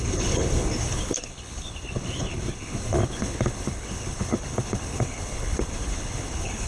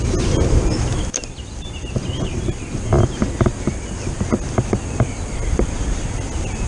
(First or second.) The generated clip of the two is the first